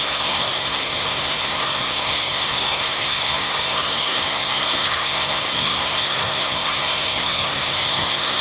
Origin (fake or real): fake